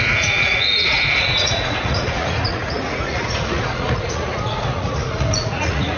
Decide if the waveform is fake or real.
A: fake